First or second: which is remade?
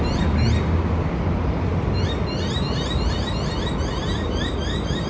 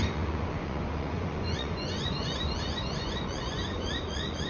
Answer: second